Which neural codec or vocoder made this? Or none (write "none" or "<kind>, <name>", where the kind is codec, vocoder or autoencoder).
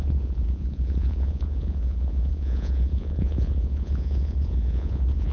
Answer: vocoder, Vocos